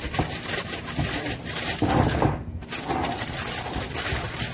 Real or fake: real